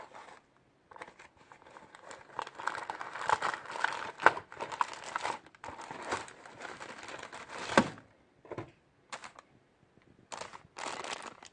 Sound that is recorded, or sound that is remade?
recorded